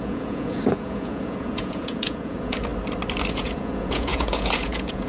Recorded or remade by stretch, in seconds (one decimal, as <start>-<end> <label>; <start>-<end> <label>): 0.0-2.7 remade; 2.7-3.3 recorded; 3.3-5.1 remade